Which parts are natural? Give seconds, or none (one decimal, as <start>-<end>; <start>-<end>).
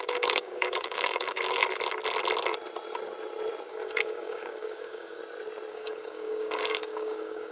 1.6-3.7; 5.2-5.7